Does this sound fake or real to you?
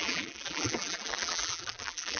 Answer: fake